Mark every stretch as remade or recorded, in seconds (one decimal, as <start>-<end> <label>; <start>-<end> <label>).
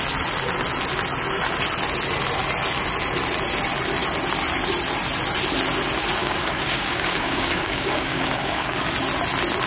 0.0-6.2 recorded; 6.2-8.9 remade; 8.9-9.7 recorded